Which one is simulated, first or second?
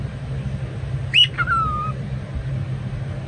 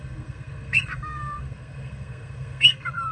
second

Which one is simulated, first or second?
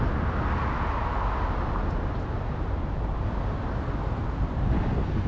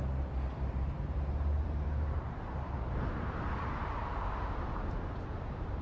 second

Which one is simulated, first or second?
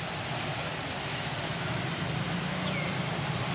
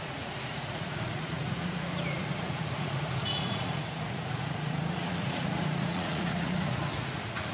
second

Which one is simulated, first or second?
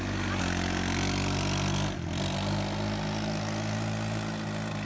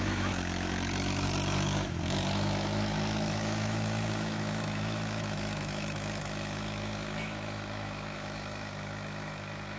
second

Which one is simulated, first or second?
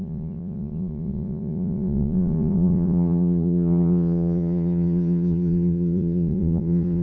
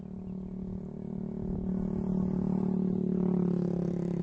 first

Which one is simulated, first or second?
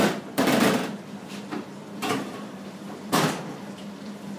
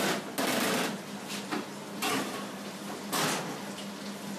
first